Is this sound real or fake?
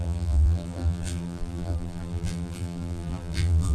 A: fake